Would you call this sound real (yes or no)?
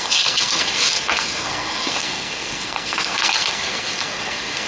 no